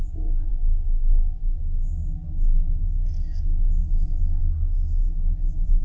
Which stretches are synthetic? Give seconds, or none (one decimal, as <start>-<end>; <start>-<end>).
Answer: 0.5-1.4